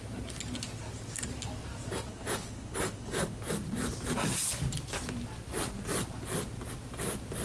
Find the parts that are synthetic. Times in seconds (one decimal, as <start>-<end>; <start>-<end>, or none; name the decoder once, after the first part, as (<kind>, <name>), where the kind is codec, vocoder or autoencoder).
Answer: 2.1-3.4 (codec, HILCodec)